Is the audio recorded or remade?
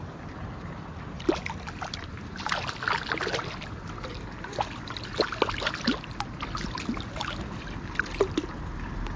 recorded